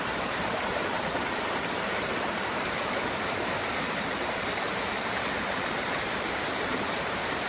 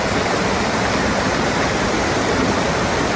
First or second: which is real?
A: second